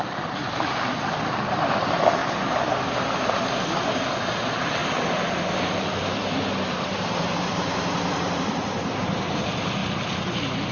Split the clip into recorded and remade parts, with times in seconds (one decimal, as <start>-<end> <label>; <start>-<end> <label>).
0.0-2.2 remade; 2.2-3.3 recorded; 3.3-9.8 remade; 9.8-10.7 recorded